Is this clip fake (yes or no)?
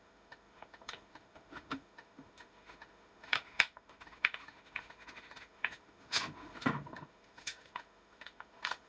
yes